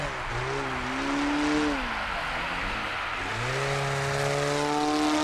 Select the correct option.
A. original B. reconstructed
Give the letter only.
A